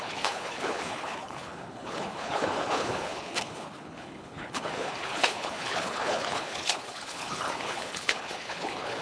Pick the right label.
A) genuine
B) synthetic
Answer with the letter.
B